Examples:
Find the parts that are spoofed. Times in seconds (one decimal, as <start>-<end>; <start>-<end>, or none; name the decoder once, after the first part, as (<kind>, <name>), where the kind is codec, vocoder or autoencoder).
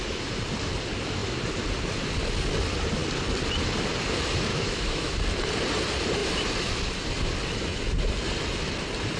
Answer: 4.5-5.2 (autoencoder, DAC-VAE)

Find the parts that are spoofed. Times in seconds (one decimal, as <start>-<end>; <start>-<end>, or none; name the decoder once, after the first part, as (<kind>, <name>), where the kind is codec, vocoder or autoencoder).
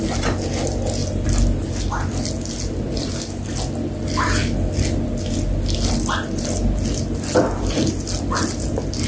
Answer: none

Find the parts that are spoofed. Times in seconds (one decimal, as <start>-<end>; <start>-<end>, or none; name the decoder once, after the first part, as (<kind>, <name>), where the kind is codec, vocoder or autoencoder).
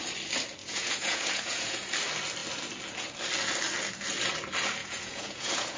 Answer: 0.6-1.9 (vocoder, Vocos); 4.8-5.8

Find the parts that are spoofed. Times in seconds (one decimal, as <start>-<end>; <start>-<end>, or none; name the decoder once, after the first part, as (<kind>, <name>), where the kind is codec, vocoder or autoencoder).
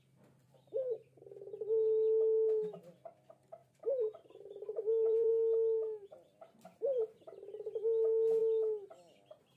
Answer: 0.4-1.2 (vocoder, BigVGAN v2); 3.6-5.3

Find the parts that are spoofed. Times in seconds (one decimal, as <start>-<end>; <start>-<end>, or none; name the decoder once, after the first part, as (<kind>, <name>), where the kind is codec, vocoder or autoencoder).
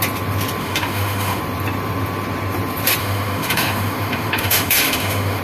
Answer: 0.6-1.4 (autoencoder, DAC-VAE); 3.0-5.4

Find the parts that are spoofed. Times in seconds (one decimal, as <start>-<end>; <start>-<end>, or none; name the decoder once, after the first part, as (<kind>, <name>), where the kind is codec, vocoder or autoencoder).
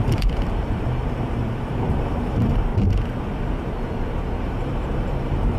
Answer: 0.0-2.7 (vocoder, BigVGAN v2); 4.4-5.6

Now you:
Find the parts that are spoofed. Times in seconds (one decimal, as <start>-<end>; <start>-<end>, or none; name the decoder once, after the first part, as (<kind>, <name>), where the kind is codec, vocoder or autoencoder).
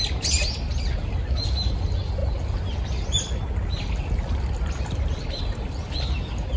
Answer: none